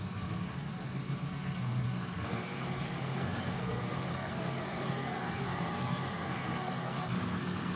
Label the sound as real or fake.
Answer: fake